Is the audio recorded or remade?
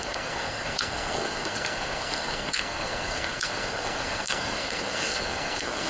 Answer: remade